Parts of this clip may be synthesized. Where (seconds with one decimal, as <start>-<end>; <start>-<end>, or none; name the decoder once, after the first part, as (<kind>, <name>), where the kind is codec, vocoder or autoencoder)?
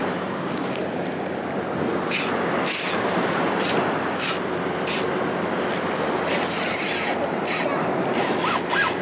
none